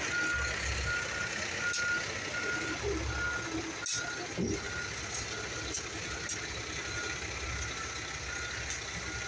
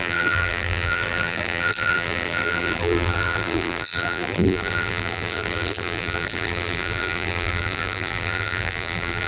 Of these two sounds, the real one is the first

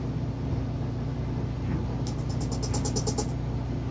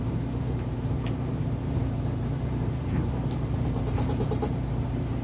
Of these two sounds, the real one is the first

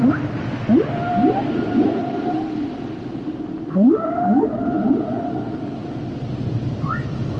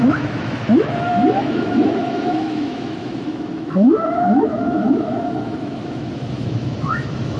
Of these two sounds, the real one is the first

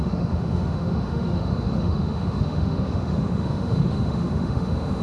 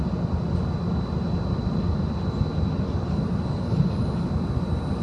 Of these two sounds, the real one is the second